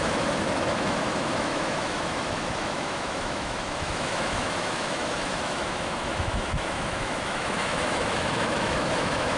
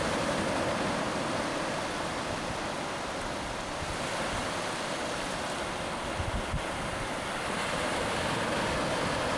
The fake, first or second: first